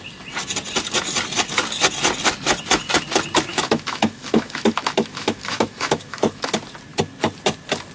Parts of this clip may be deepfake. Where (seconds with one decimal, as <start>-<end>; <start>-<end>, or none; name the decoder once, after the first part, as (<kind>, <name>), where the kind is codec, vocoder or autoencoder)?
3.5-6.5 (autoencoder, DAC-VAE)

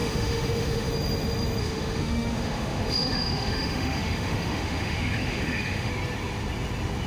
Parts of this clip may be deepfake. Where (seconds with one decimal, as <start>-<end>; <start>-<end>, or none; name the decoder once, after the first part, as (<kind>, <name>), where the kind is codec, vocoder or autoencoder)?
0.0-0.9 (autoencoder, DAC-VAE); 1.6-5.9